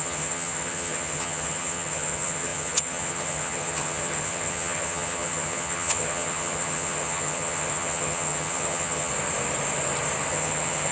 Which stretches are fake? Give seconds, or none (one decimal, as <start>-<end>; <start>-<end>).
0.0-9.1; 10.3-10.9